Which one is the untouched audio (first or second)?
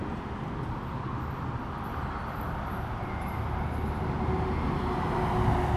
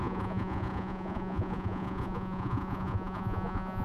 first